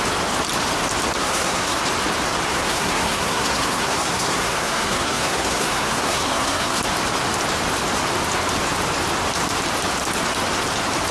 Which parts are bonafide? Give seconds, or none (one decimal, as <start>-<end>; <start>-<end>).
0.0-1.2; 1.8-2.5; 6.8-11.1